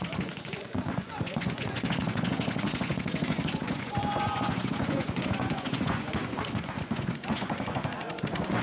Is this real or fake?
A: fake